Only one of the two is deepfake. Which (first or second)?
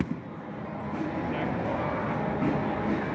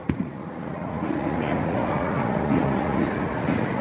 second